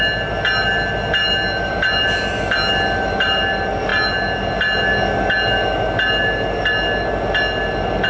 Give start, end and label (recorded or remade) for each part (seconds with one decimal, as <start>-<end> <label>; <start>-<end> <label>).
0.0-8.1 recorded